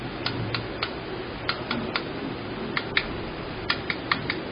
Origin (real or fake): real